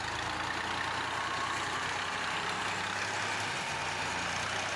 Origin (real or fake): real